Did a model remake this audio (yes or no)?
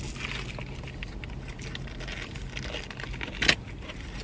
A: no